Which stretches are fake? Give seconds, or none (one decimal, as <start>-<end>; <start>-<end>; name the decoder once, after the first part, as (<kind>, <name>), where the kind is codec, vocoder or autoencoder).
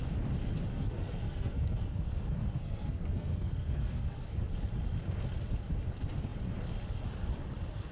0.7-4.4 (codec, SNAC)